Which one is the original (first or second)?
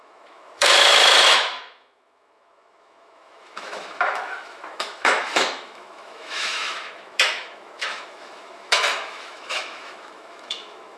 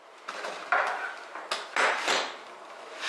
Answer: second